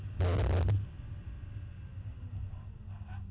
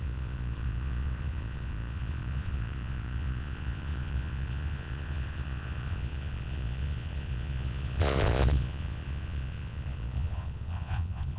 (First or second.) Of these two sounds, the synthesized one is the second